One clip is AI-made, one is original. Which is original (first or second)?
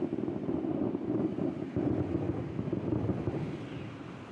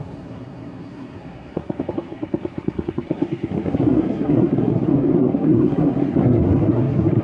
first